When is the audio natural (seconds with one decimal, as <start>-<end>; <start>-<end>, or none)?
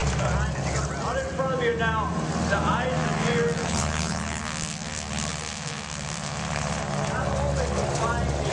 0.0-3.6; 4.4-8.5